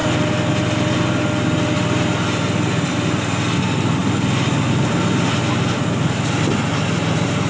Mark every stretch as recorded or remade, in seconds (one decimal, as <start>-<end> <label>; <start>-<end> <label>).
0.0-7.5 recorded